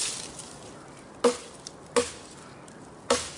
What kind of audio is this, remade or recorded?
recorded